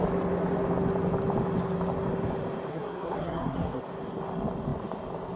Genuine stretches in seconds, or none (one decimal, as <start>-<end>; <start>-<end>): 0.0-2.7; 3.8-5.4